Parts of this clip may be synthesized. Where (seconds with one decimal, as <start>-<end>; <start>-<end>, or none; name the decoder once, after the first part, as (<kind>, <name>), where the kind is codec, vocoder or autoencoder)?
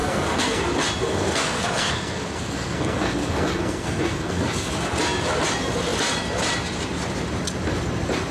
0.0-0.6 (codec, SNAC); 1.1-4.7